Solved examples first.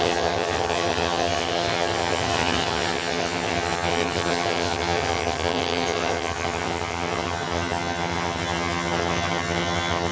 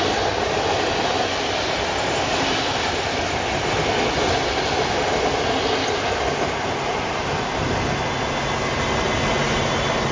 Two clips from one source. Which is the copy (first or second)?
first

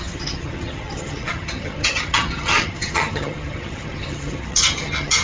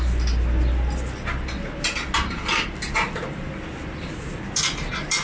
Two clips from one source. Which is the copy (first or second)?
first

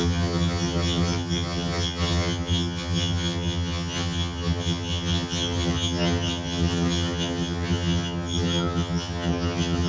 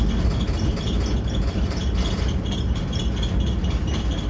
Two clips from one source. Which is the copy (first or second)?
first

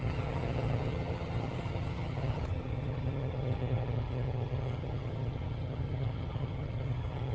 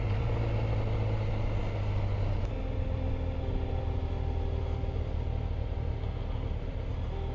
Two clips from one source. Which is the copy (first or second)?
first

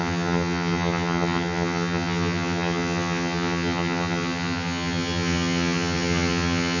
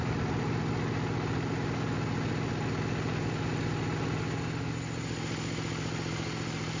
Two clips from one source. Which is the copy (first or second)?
first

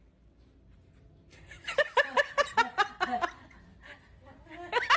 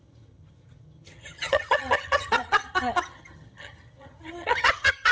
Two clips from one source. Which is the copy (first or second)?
second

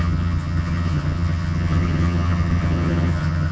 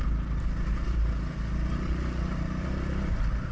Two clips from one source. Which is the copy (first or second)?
first